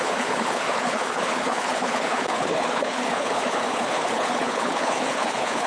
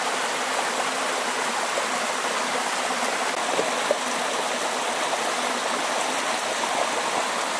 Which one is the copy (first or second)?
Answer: first